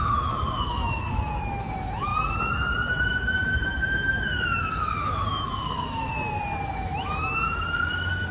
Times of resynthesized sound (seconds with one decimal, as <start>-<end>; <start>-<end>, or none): 0.0-2.1; 2.9-6.1; 6.7-8.3